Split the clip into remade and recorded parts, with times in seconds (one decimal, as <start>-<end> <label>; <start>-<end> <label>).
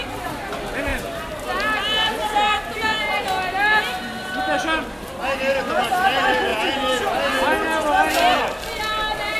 0.0-9.4 recorded